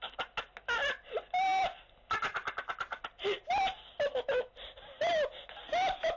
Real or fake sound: real